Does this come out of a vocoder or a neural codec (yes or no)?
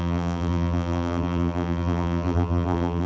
yes